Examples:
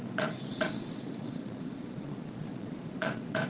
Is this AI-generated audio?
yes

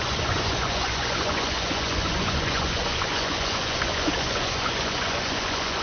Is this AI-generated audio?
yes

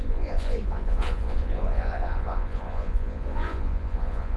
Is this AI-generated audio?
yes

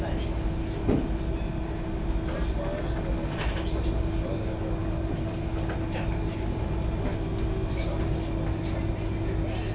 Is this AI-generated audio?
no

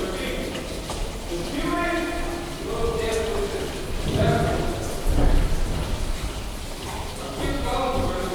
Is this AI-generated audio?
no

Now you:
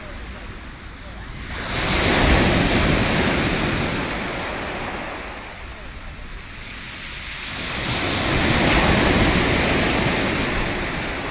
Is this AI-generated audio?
no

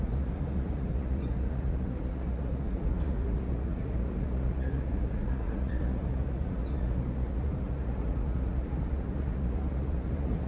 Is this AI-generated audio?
yes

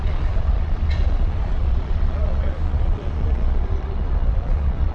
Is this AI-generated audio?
yes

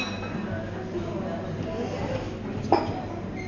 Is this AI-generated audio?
no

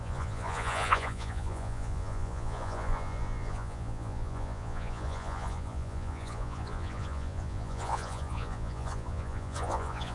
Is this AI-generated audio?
yes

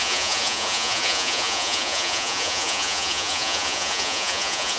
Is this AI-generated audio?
yes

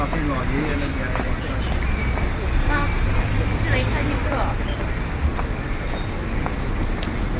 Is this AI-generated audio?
no